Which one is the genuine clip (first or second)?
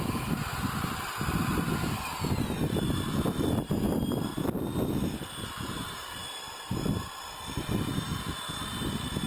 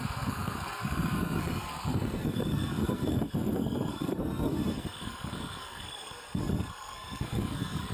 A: first